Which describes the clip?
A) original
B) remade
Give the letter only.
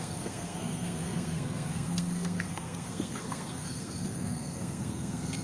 B